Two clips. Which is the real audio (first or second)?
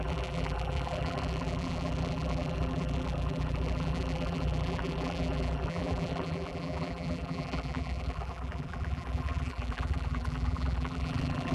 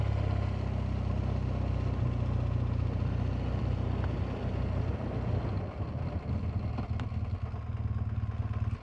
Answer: second